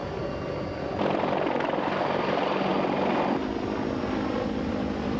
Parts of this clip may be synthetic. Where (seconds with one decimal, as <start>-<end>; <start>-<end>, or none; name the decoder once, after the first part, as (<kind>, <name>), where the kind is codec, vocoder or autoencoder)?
none